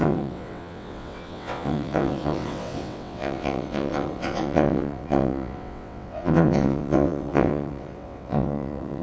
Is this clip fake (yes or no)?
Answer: yes